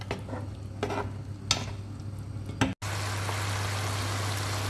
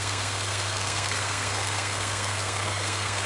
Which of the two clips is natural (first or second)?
first